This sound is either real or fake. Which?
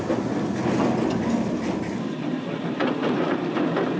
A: real